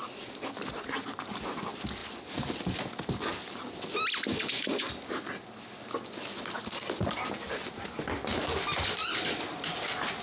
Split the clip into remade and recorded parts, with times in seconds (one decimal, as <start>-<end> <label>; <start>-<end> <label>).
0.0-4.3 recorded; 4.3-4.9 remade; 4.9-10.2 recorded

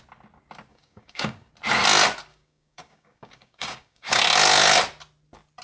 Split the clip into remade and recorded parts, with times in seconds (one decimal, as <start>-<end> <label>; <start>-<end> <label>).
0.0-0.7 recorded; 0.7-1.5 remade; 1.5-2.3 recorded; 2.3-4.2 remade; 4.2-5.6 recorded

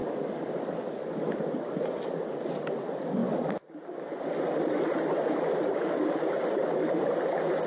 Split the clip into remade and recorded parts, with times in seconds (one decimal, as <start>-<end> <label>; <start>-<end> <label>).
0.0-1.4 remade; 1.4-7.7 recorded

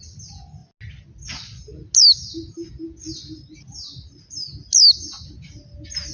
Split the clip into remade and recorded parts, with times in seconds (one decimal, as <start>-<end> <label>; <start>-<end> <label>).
0.0-6.1 recorded

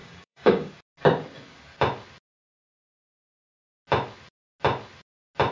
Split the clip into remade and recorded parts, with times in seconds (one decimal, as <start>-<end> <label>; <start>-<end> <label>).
0.0-0.7 remade; 0.7-5.5 recorded

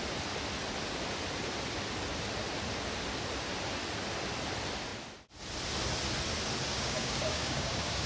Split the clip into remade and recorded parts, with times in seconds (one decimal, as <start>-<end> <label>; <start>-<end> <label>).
0.0-6.7 recorded; 6.7-8.1 remade

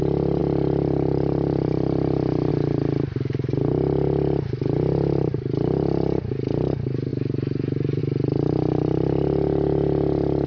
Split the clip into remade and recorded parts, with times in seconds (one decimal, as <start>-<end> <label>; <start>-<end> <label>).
0.0-10.5 recorded